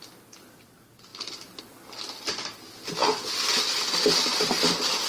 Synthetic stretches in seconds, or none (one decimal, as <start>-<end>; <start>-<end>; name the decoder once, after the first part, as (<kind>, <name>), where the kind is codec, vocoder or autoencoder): 1.1-1.6 (vocoder, BigVGAN v2)